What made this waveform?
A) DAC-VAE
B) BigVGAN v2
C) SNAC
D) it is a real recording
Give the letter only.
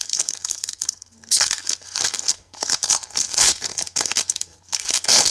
C